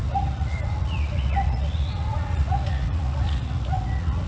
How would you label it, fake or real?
fake